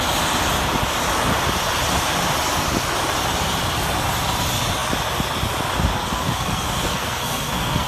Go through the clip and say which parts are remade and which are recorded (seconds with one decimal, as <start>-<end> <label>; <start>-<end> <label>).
0.0-5.9 recorded; 5.9-7.9 remade